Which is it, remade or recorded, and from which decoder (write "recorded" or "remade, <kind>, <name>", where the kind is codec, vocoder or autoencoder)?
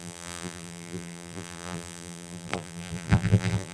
remade, vocoder, BigVGAN v2